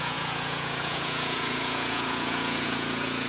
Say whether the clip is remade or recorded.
remade